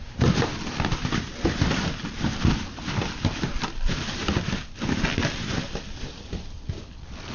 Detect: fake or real fake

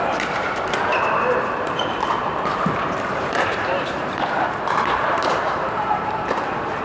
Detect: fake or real fake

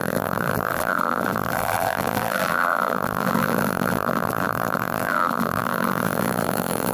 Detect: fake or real fake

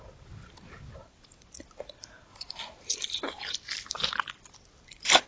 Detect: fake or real fake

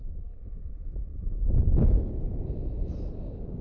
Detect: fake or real real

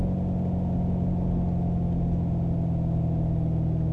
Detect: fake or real real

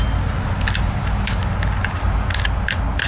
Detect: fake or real real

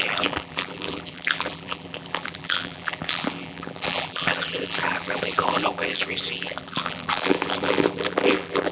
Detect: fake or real fake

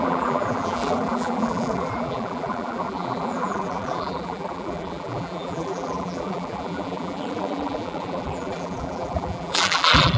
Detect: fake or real fake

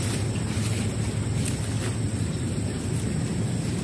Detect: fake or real real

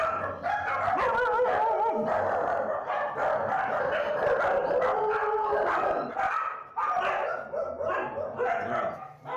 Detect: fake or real real